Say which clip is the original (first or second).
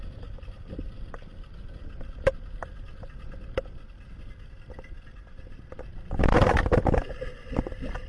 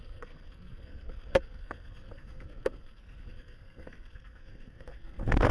first